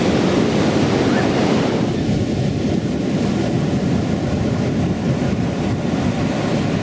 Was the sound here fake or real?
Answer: real